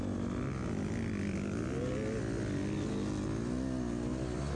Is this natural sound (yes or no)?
yes